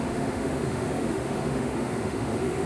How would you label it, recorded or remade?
remade